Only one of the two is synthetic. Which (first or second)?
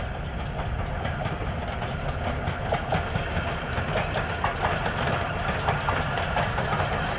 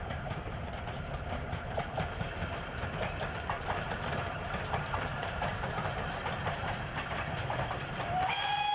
second